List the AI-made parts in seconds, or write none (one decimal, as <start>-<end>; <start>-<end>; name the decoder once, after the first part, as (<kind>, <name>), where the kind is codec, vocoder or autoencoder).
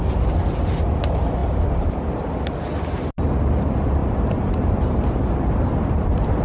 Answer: none